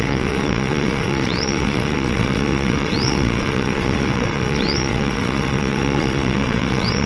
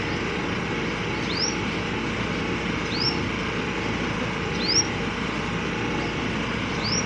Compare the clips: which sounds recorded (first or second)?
second